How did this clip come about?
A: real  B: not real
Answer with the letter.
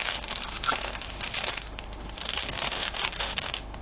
B